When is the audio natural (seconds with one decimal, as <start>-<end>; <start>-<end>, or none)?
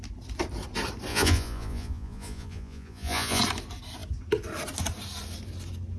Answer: 0.0-1.1; 3.4-6.0